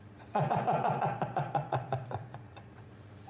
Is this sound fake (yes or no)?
yes